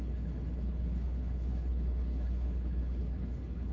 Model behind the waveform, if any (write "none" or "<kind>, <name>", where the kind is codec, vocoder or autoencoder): codec, HILCodec